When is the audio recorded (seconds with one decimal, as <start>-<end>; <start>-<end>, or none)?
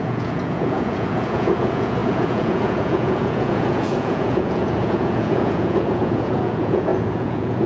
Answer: none